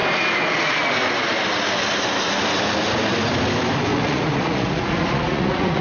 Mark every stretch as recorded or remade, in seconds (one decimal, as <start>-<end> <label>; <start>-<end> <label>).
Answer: 0.0-3.9 recorded; 3.9-5.8 remade